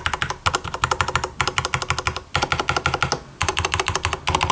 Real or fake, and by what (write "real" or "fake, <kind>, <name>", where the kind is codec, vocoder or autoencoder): real